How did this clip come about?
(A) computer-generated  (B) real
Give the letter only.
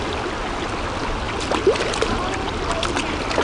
B